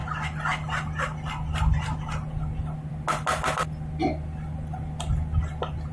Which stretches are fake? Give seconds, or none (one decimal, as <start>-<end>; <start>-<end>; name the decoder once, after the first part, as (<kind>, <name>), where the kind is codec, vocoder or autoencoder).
none